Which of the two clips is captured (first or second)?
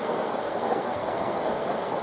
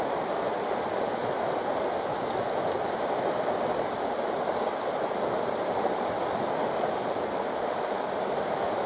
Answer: second